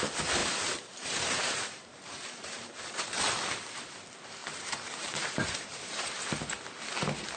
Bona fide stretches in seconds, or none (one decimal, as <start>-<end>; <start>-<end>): 0.0-0.4; 3.0-4.4; 6.0-7.4